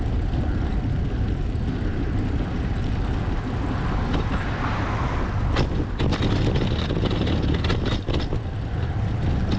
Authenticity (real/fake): real